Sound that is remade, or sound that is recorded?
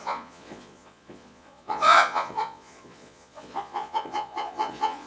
remade